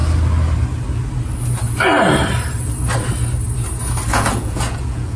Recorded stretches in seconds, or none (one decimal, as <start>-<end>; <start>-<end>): 0.0-4.1